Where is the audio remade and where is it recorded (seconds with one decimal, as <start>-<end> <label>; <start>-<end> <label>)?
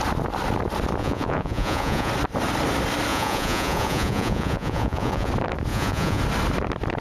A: 0.0-1.0 recorded; 1.0-2.1 remade; 2.1-3.1 recorded; 3.1-5.3 remade; 5.3-5.7 recorded; 5.7-6.2 remade; 6.2-7.0 recorded